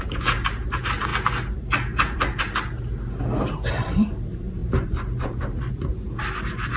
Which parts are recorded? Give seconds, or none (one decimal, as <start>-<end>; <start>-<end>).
1.1-3.4